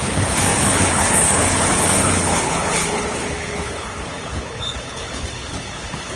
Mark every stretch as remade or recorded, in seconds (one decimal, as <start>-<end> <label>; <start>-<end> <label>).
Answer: 0.0-6.2 remade